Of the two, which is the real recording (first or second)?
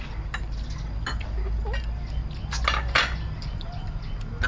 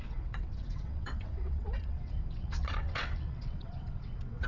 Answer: first